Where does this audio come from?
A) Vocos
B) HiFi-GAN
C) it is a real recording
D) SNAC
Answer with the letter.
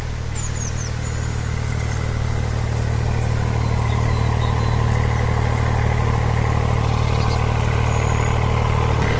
C